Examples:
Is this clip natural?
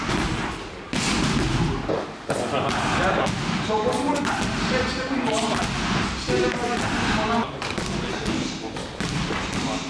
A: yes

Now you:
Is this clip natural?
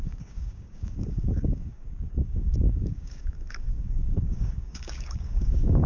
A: no